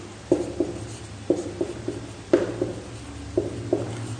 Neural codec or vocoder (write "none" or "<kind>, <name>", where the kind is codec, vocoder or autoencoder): none